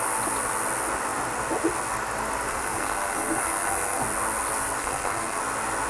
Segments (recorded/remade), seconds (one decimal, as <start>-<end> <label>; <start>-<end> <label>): 0.0-2.5 recorded; 2.5-4.0 remade; 4.0-4.8 recorded; 4.8-5.4 remade; 5.4-5.9 recorded